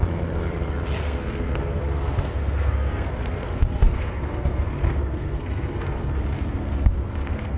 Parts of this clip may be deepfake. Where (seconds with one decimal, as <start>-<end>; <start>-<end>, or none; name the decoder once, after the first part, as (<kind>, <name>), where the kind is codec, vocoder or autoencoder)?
1.0-7.6 (codec, SNAC)